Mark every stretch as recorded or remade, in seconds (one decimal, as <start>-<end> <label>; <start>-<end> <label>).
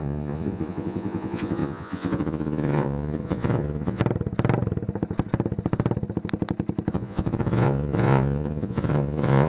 0.0-4.0 remade; 4.0-6.9 recorded; 6.9-9.5 remade